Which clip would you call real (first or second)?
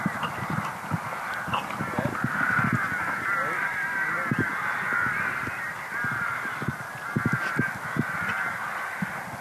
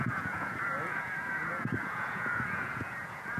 first